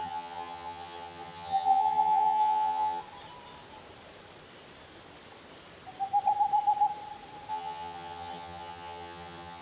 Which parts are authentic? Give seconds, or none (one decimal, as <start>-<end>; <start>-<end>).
3.0-7.5